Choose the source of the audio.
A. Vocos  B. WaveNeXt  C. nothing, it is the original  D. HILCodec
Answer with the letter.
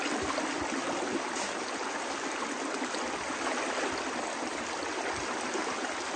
C